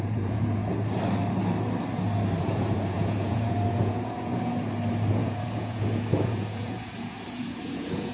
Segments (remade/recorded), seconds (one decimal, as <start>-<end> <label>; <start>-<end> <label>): 0.0-0.6 remade; 0.6-2.4 recorded; 2.4-4.5 remade; 4.5-5.1 recorded; 5.1-8.1 remade

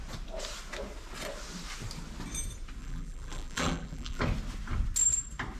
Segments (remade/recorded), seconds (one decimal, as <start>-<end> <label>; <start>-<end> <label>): 0.0-2.8 recorded; 2.8-4.2 remade; 4.2-5.6 recorded

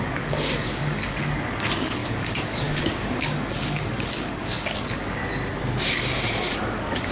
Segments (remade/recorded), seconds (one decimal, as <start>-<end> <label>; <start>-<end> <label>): 0.0-5.2 remade; 5.2-5.9 recorded; 5.9-7.1 remade

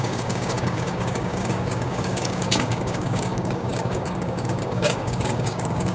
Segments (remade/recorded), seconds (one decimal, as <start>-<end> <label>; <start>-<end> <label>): 0.0-5.9 remade

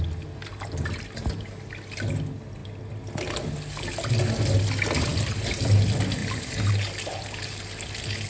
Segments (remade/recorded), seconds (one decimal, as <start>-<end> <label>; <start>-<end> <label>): 0.0-5.1 recorded; 5.1-5.7 remade; 5.7-6.2 recorded; 6.2-6.7 remade; 6.7-8.3 recorded

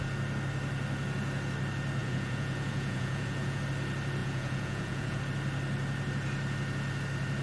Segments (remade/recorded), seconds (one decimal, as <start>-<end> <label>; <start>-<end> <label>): 0.0-2.0 recorded; 2.0-3.6 remade; 3.6-4.2 recorded; 4.2-5.2 remade; 5.2-7.4 recorded